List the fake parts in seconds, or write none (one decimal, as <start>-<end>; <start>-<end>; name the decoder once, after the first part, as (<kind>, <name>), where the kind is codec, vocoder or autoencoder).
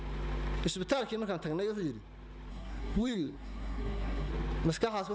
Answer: 2.5-4.3 (codec, SNAC)